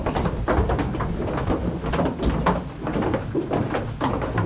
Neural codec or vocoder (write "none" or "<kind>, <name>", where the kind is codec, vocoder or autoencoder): none